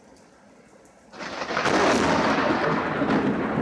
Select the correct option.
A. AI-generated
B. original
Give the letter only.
B